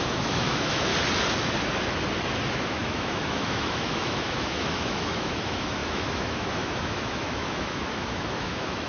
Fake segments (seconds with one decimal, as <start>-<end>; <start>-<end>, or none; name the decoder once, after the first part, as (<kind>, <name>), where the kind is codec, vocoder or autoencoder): 0.0-0.9 (autoencoder, DAC-VAE); 2.5-8.9